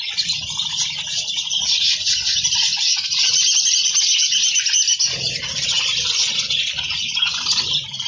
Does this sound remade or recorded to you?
recorded